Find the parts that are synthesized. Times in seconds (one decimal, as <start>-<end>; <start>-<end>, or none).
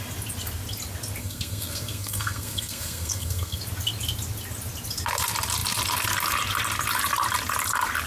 1.2-3.6